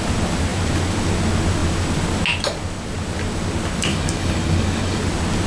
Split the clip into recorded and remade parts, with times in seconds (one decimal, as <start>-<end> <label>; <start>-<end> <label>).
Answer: 0.0-3.9 recorded; 3.9-5.0 remade; 5.0-5.5 recorded